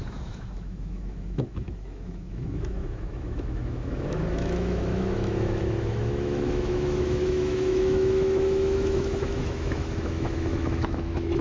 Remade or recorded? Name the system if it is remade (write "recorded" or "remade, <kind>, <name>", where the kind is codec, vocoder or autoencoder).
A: remade, autoencoder, DAC-VAE